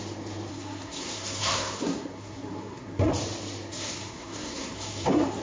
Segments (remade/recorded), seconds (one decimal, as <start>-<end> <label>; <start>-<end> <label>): 0.0-0.5 recorded; 0.5-3.1 remade; 3.1-3.7 recorded; 3.7-5.4 remade